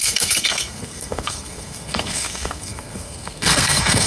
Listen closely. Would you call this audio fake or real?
fake